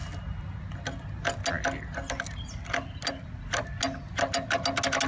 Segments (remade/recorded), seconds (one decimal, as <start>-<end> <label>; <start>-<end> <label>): 0.0-5.1 recorded